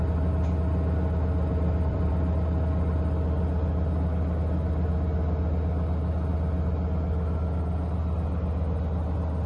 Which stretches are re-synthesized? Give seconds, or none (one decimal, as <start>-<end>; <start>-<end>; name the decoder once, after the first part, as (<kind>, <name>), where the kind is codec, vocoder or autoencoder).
1.5-2.1 (vocoder, BigVGAN v2)